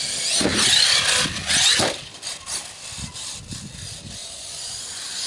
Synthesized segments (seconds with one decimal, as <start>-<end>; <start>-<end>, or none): 4.2-5.3